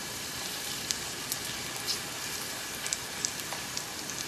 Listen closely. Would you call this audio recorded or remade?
remade